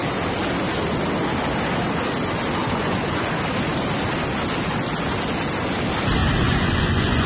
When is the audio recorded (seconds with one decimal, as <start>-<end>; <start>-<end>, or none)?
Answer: 0.0-2.6; 3.3-6.2